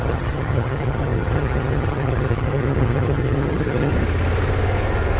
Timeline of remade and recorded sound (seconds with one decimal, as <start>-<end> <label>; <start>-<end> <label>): 0.0-3.9 remade; 3.9-5.2 recorded